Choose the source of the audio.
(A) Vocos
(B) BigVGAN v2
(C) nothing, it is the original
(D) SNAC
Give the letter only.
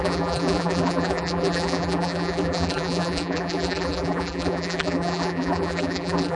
B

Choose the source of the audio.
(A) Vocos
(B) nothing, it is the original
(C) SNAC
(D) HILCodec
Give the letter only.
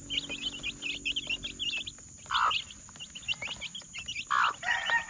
B